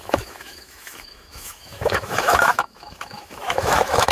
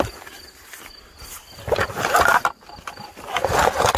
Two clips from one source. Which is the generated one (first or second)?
first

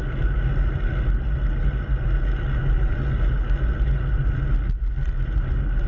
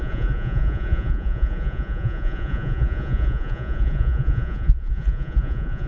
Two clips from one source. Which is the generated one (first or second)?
second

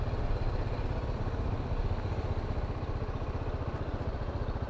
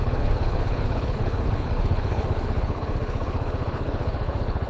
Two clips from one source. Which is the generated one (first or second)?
second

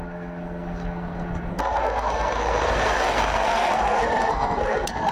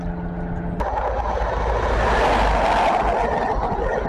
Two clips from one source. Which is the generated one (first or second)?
first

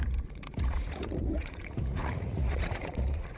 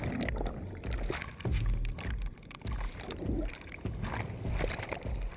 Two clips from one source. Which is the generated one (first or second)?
first